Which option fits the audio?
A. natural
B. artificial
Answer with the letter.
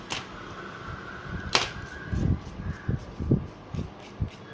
A